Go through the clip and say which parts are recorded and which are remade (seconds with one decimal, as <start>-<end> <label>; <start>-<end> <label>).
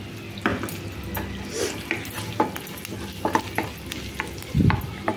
0.0-5.2 recorded